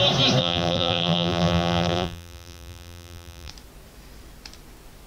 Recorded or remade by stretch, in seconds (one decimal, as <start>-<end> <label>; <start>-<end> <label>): 0.0-0.4 recorded; 0.4-3.5 remade; 3.5-5.1 recorded